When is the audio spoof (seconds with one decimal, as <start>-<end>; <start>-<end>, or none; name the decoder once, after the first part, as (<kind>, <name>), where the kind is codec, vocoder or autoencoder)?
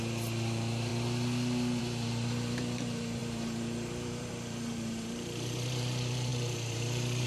0.0-0.9 (vocoder, BigVGAN v2); 1.8-7.3